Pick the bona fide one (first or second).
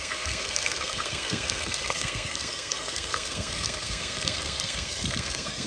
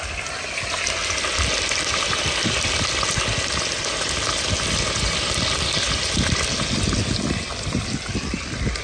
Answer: second